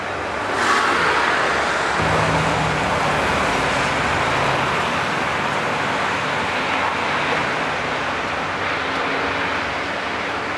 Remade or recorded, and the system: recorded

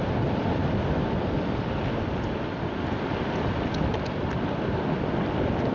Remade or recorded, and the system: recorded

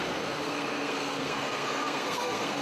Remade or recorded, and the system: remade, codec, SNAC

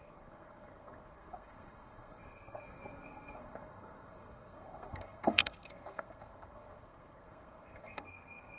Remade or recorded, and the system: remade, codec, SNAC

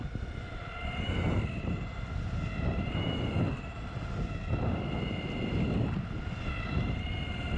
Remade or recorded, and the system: recorded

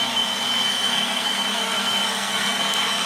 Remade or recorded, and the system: remade, codec, SNAC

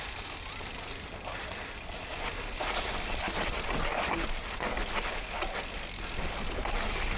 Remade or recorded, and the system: recorded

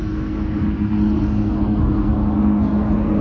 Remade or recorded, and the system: remade, codec, SNAC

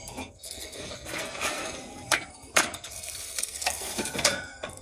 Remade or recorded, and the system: remade, codec, SNAC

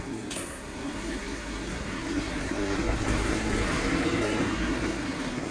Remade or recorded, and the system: remade, codec, SNAC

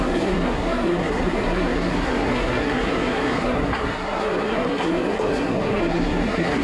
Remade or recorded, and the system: remade, codec, SNAC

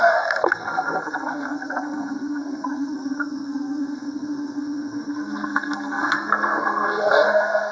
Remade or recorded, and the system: remade, codec, SNAC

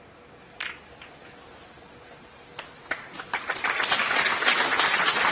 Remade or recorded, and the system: recorded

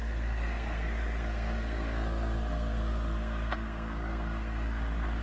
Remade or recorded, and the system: remade, codec, SNAC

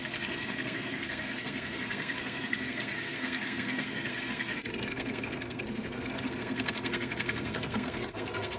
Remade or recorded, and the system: remade, codec, SNAC